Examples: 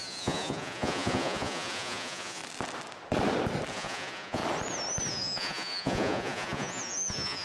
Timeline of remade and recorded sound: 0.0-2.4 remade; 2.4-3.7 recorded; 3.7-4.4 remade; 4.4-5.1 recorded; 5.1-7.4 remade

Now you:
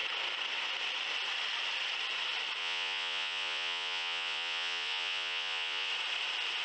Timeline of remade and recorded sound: 0.0-2.6 recorded; 2.6-5.9 remade; 5.9-6.6 recorded

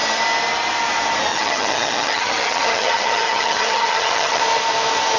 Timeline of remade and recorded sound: 0.0-1.3 recorded; 1.3-4.4 remade; 4.4-5.2 recorded

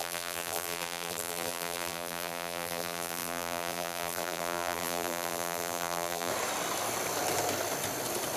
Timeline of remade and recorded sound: 0.0-6.3 remade; 6.3-8.4 recorded

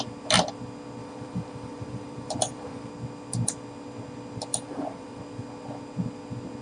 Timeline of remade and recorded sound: 0.0-1.0 recorded; 1.0-2.9 remade; 2.9-4.5 recorded; 4.5-5.2 remade; 5.2-6.6 recorded

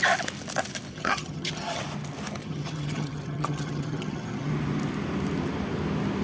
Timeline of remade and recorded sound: 0.0-0.9 recorded; 0.9-1.8 remade; 1.8-2.4 recorded; 2.4-4.5 remade; 4.5-6.2 recorded

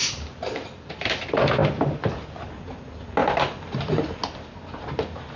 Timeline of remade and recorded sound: 0.0-0.9 remade; 0.9-1.6 recorded; 1.6-2.5 remade; 2.5-3.2 recorded; 3.2-3.9 remade; 3.9-5.4 recorded